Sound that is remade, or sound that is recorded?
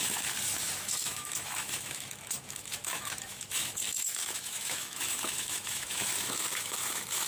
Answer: remade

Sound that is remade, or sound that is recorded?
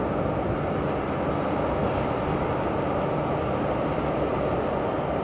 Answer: recorded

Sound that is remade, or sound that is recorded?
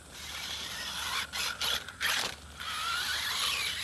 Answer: recorded